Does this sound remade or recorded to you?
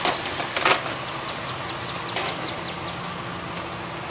recorded